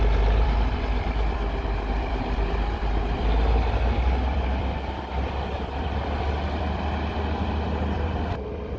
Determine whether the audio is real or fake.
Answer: fake